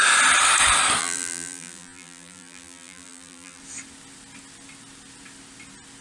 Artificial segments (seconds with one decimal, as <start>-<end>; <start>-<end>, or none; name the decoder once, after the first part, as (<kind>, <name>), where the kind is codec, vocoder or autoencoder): 1.0-3.6 (vocoder, BigVGAN v2)

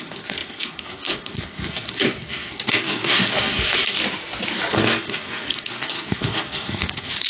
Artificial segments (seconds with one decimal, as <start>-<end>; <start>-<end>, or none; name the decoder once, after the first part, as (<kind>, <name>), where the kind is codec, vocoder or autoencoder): 0.0-4.0 (codec, SNAC); 4.7-7.3

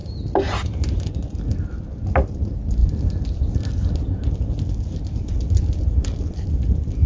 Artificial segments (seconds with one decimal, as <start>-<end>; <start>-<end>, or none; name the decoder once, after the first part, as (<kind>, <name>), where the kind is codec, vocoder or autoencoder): none

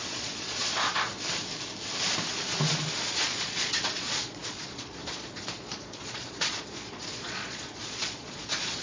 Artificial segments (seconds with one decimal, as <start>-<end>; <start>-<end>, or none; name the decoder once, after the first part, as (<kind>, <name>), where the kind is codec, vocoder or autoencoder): 0.0-1.1 (vocoder, Vocos); 3.0-8.8

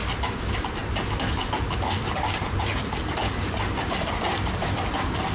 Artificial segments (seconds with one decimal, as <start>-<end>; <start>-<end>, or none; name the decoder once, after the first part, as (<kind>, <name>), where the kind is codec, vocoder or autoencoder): none

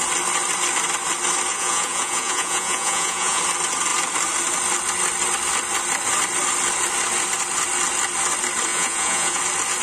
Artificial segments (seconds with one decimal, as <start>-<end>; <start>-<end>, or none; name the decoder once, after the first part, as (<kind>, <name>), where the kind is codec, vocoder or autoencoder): 1.5-3.4 (vocoder, Vocos); 8.7-9.4